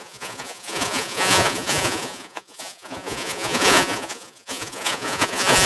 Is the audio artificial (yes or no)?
yes